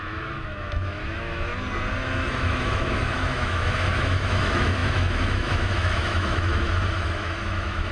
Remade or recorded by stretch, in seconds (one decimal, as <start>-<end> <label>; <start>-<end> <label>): 0.0-1.5 remade; 1.5-2.2 recorded; 2.2-7.9 remade